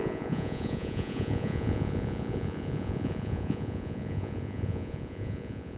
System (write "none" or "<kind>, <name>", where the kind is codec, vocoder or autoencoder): vocoder, Vocos